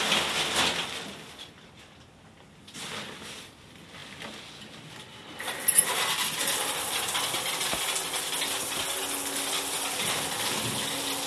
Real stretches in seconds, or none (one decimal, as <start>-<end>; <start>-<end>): 0.0-11.3